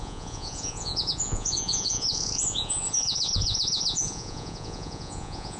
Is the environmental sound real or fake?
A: fake